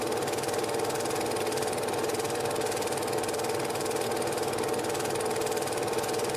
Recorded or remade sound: recorded